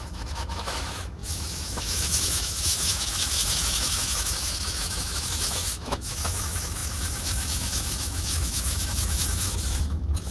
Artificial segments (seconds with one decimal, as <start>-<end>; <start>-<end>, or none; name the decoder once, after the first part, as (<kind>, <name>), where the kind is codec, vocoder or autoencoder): 0.0-10.3 (autoencoder, DAC-VAE)